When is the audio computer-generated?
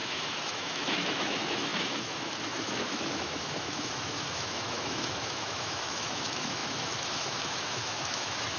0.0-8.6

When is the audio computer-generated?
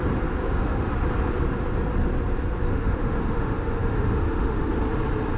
0.4-0.9; 2.7-4.8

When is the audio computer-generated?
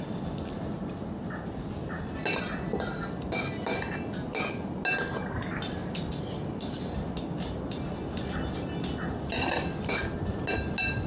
none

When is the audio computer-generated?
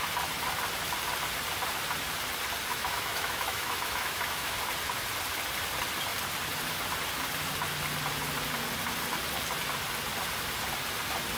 2.7-4.6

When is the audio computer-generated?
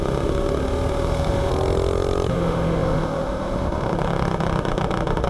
0.0-1.5; 2.3-5.3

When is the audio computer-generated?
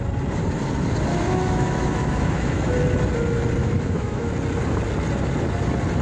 1.1-2.7; 3.6-4.3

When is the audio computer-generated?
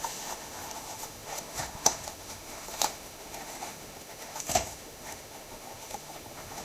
0.0-6.6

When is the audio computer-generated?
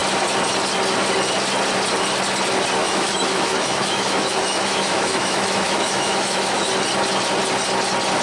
2.8-6.7